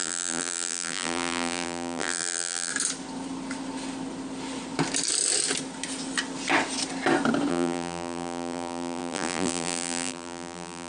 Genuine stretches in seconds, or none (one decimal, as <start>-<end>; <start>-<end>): 2.7-7.5